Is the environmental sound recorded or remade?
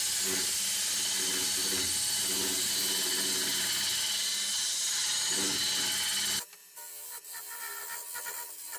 recorded